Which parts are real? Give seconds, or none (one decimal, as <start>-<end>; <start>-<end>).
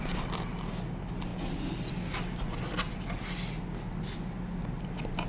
0.0-5.3